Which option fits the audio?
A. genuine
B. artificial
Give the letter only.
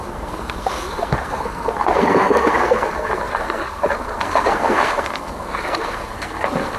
B